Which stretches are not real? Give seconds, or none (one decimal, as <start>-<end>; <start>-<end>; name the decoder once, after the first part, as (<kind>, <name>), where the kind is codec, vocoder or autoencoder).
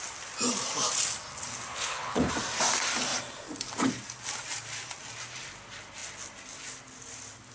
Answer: 1.7-2.3 (codec, HILCodec)